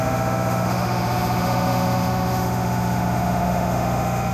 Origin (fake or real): fake